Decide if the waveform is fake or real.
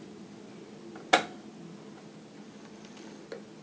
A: real